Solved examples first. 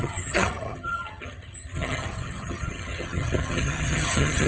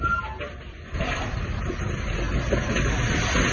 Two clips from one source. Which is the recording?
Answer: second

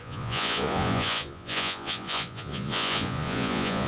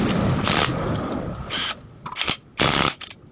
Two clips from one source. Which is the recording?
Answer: second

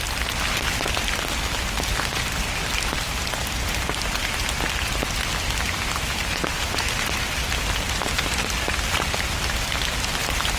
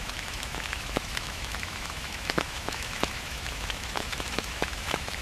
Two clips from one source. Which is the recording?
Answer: first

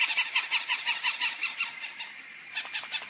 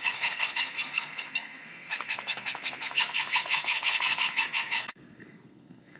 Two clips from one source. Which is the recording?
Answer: first